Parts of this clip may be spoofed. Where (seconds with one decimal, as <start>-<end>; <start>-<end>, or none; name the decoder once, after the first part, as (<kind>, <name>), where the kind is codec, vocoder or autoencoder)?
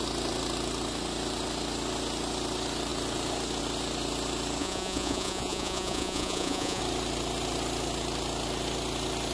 4.6-6.8 (vocoder, Vocos)